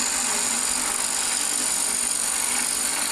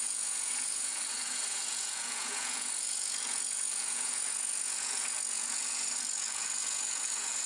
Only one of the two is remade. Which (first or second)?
second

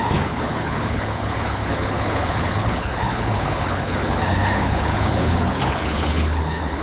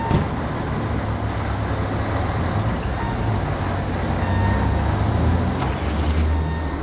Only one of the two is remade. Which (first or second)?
first